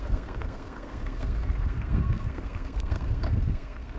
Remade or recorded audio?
remade